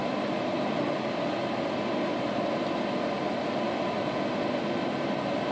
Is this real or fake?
real